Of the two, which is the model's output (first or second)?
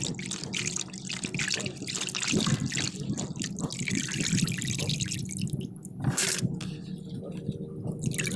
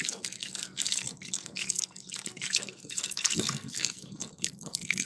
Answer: second